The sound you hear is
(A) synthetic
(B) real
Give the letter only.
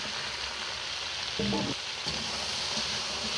B